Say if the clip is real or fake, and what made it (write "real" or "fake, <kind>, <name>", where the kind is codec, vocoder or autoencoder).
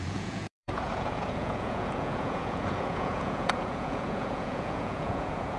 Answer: fake, vocoder, Vocos